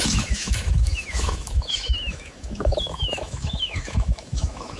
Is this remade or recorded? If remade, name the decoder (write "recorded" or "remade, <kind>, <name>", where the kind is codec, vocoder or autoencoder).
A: remade, autoencoder, DAC-VAE